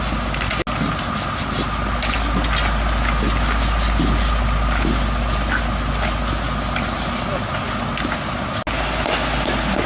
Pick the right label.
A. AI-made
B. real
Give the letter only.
B